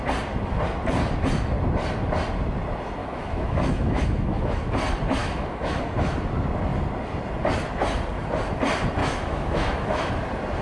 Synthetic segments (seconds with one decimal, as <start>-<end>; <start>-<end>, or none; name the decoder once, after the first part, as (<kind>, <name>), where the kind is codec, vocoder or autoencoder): 3.0-4.7 (autoencoder, DAC-VAE); 5.2-5.8; 9.0-10.1